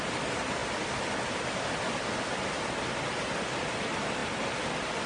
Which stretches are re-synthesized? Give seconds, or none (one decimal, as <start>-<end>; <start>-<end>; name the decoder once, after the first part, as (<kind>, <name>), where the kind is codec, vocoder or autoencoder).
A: none